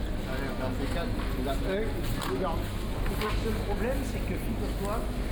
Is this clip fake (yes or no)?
no